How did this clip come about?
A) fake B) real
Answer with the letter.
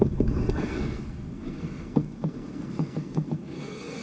A